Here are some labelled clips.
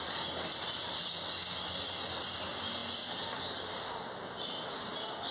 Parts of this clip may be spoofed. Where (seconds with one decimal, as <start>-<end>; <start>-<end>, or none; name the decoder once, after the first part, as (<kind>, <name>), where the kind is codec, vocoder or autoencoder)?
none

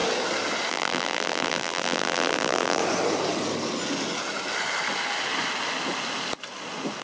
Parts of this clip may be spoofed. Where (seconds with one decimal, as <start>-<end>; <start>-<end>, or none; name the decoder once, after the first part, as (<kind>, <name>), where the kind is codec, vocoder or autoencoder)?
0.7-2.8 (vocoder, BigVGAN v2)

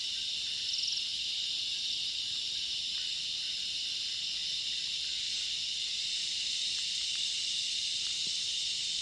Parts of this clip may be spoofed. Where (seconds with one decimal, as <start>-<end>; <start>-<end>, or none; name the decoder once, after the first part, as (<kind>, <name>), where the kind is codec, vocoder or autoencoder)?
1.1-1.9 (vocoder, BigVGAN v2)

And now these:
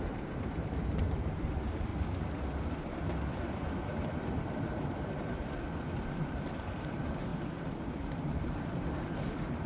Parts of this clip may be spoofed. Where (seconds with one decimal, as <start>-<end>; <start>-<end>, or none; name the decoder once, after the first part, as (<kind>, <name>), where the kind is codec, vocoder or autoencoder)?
0.0-1.9 (vocoder, BigVGAN v2); 3.8-7.3; 7.9-9.7

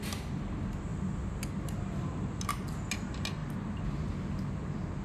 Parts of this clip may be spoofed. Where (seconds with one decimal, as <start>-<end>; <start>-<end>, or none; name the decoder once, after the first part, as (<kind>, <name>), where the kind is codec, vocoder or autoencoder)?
none

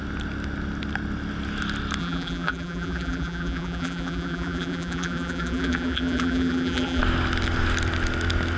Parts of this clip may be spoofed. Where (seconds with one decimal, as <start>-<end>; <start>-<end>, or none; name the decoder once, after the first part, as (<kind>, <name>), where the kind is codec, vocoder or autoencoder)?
2.0-7.0 (vocoder, BigVGAN v2)

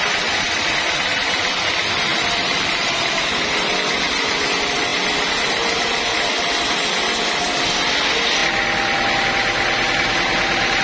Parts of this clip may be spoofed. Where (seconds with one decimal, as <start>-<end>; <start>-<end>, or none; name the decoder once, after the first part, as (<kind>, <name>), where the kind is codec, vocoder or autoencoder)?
2.1-3.9 (vocoder, BigVGAN v2)

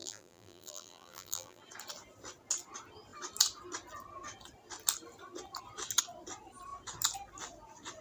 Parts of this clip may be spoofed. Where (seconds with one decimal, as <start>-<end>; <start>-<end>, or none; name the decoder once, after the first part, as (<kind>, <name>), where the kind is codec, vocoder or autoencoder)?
0.0-1.6 (vocoder, BigVGAN v2)